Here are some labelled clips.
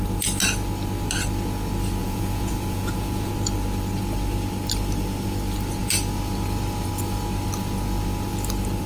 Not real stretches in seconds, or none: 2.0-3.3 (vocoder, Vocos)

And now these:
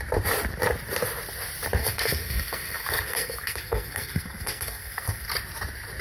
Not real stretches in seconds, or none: 1.8-5.3 (codec, SNAC)